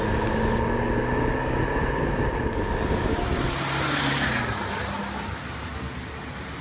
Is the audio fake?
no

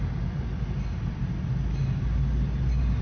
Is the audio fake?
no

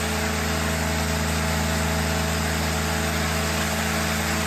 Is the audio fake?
no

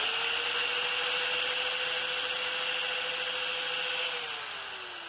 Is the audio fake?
no